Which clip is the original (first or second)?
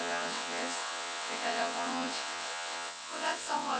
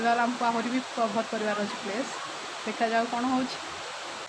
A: second